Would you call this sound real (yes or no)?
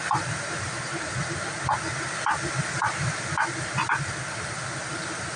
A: yes